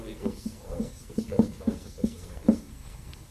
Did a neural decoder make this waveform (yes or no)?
yes